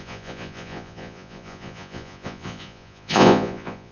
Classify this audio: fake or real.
fake